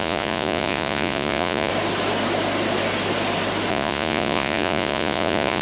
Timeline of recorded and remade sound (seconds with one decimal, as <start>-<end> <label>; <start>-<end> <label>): 0.0-1.7 remade; 1.7-3.7 recorded; 3.7-5.6 remade